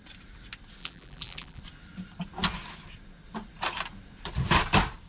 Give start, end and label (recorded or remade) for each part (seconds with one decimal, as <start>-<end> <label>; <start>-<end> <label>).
0.0-0.8 recorded; 0.8-1.6 remade; 1.6-5.1 recorded